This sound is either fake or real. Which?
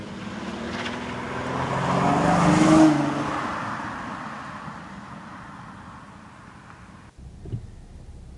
real